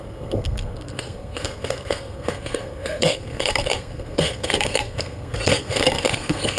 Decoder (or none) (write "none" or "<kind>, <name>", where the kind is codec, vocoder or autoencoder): codec, SNAC